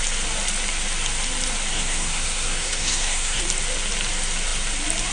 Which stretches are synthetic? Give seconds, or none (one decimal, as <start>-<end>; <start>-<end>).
1.7-3.4